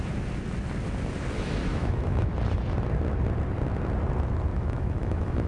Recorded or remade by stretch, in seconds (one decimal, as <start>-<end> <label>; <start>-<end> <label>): 0.0-1.7 recorded; 1.7-2.3 remade; 2.3-4.5 recorded; 4.5-5.5 remade